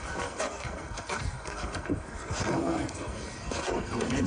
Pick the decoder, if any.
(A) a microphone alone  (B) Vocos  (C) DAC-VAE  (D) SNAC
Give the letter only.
D